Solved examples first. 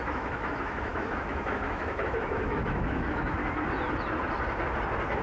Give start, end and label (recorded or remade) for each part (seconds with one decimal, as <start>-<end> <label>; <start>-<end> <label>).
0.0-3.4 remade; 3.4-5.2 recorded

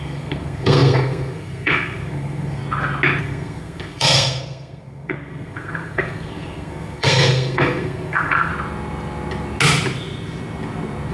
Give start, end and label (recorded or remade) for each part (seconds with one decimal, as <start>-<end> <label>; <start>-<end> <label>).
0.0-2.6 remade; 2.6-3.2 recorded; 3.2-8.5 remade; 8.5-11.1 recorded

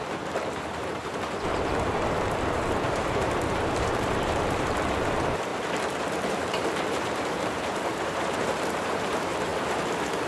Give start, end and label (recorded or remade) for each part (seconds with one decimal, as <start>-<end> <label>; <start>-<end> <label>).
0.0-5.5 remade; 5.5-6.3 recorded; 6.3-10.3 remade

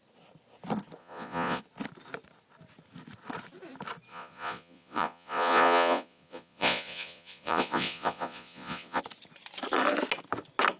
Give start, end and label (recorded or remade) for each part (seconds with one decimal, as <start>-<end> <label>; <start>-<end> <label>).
0.0-1.0 recorded; 1.0-1.6 remade; 1.6-4.1 recorded; 4.1-9.0 remade; 9.0-10.8 recorded

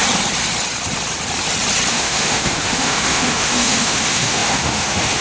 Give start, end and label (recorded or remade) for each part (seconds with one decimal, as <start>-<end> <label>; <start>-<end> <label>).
0.0-1.9 recorded; 1.9-5.2 remade